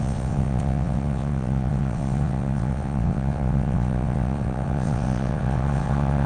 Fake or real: fake